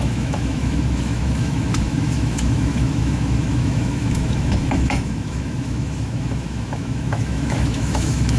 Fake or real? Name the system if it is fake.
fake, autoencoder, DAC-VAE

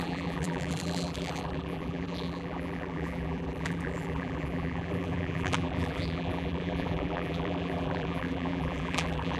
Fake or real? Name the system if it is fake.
fake, vocoder, BigVGAN v2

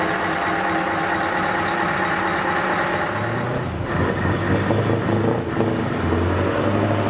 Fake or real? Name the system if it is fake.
real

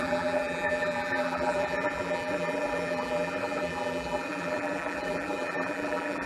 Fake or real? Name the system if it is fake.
fake, vocoder, BigVGAN v2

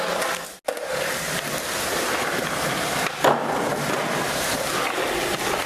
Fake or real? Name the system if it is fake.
real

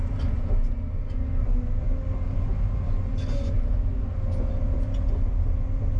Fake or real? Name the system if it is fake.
real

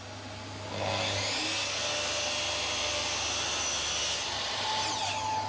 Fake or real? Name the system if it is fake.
real